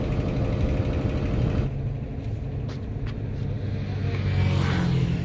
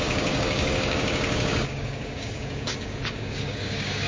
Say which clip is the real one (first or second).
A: first